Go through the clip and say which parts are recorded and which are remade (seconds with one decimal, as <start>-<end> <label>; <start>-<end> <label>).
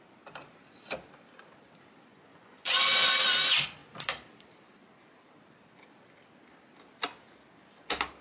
0.0-2.1 recorded; 2.1-3.1 remade; 3.1-8.2 recorded